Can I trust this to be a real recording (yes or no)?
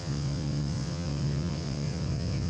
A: no